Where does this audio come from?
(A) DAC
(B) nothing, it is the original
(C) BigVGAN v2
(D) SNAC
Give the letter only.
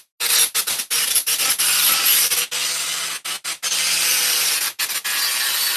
B